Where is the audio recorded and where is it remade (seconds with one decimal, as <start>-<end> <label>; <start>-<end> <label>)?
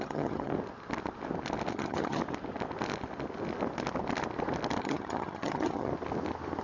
0.0-0.5 remade; 0.5-1.7 recorded; 1.7-2.2 remade; 2.2-4.8 recorded; 4.8-5.9 remade; 5.9-6.6 recorded